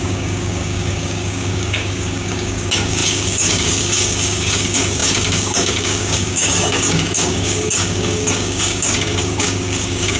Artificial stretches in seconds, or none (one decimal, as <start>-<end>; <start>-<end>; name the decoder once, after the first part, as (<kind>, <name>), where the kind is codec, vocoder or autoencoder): 0.0-10.2 (codec, DAC)